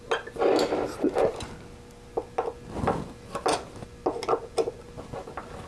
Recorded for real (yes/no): yes